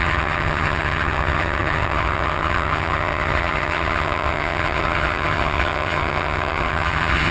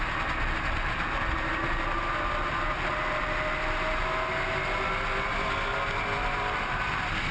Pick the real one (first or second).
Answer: second